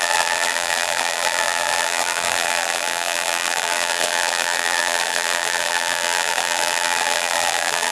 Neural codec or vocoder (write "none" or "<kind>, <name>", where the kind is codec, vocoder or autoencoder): vocoder, BigVGAN v2